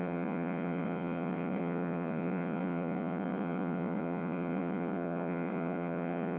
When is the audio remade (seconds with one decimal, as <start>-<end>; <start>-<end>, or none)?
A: 0.0-6.4